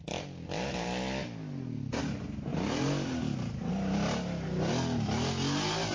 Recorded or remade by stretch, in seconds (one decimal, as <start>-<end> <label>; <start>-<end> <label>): 0.0-5.9 recorded